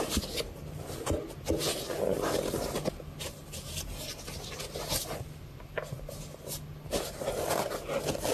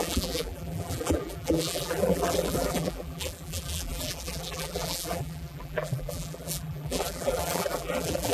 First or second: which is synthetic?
second